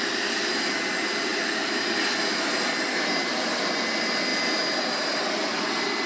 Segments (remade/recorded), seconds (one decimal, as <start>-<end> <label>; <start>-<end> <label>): 0.0-6.1 recorded